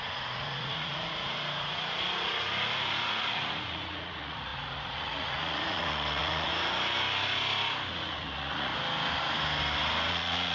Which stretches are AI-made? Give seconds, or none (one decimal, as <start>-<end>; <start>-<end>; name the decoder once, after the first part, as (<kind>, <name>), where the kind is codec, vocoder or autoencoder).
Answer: 0.0-6.5 (vocoder, Vocos); 7.9-8.7; 10.1-10.5